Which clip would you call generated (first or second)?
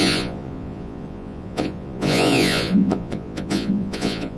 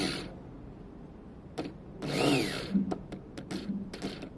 first